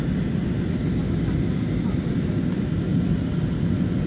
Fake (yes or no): no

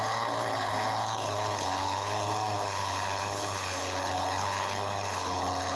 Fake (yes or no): yes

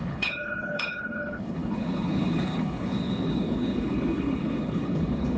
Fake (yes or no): yes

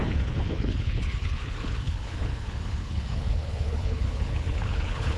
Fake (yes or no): yes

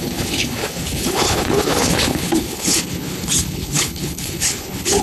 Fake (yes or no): yes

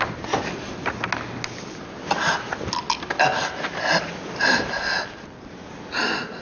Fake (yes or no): no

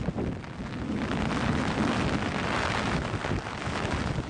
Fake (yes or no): no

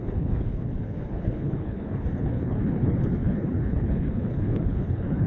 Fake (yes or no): yes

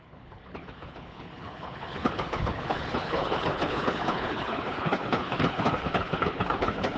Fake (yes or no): yes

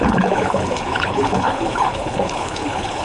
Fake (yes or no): yes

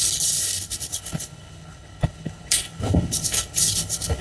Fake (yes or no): yes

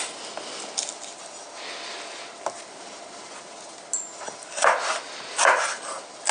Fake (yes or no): no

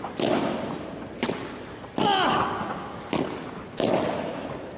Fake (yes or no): no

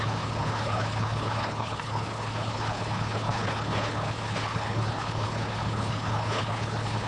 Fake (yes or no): yes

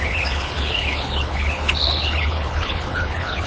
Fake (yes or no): yes